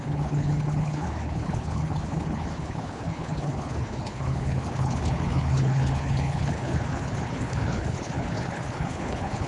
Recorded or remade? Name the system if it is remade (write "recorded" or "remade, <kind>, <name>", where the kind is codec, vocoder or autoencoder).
remade, codec, HILCodec